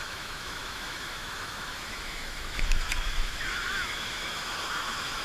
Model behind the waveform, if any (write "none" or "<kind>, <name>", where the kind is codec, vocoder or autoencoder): autoencoder, DAC-VAE